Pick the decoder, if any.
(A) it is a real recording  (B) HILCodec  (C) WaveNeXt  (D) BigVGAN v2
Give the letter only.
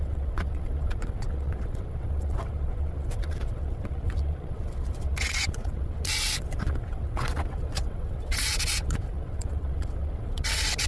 C